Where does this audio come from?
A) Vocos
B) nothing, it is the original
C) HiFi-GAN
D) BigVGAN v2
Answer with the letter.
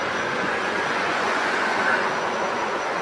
A